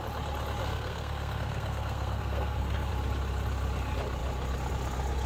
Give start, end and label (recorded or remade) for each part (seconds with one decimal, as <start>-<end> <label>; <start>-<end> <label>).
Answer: 0.0-0.6 recorded; 0.6-2.9 remade; 2.9-5.3 recorded